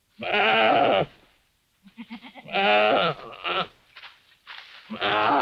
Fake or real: real